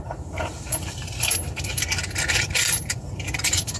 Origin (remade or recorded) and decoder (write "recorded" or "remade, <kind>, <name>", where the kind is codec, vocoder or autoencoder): remade, vocoder, BigVGAN v2